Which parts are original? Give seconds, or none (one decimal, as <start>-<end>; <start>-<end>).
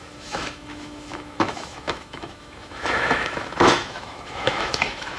none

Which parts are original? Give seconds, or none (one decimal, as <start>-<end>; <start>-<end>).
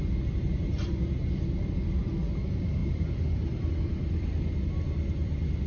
0.0-1.2; 2.1-2.8; 3.7-5.7